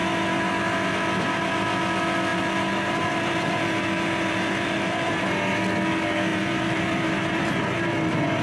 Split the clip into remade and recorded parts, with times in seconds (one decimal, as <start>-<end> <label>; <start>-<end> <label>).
0.0-2.3 recorded; 2.3-5.1 remade; 5.1-6.3 recorded; 6.3-7.5 remade; 7.5-8.4 recorded